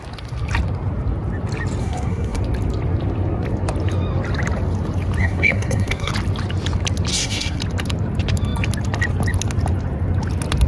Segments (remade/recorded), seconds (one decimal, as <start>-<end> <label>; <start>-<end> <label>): 0.0-1.8 recorded; 1.8-2.4 remade; 2.4-5.2 recorded; 5.2-6.1 remade; 6.1-7.1 recorded; 7.1-7.6 remade; 7.6-10.7 recorded